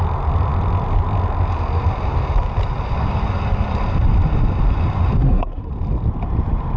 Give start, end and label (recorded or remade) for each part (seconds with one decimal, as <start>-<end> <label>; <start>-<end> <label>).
0.0-5.2 recorded; 5.2-5.7 remade; 5.7-6.8 recorded